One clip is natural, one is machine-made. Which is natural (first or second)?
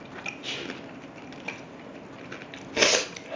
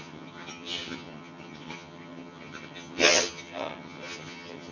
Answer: first